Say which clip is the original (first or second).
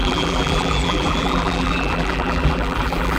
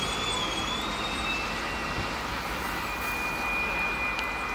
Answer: second